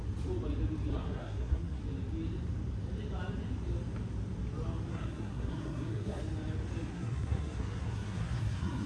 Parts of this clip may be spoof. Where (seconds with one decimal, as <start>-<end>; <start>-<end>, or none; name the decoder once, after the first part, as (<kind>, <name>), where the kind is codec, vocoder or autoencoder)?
0.9-1.8 (codec, SNAC); 4.9-6.2; 6.9-8.9

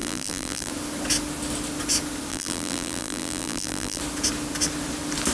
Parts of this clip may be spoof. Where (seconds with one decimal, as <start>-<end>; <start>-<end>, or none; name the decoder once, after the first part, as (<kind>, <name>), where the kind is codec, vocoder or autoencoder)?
0.0-0.7 (vocoder, BigVGAN v2); 2.3-4.0

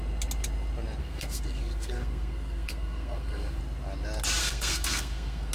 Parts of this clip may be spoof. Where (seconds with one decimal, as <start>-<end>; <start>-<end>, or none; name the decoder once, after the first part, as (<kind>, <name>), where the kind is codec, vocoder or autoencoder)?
1.0-3.6 (codec, SNAC); 4.4-5.5

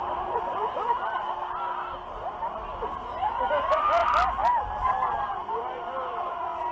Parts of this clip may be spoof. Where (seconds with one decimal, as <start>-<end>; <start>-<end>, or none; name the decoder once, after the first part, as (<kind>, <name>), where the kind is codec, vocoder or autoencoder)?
5.4-6.7 (vocoder, BigVGAN v2)

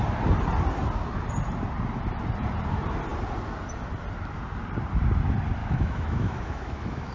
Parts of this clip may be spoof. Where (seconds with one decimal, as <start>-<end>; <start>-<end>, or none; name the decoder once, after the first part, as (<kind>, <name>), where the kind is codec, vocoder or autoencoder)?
5.6-7.1 (autoencoder, DAC-VAE)

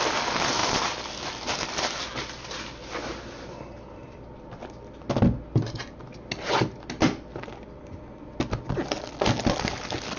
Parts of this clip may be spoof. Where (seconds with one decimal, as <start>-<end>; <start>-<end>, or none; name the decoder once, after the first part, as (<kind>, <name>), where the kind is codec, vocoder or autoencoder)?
none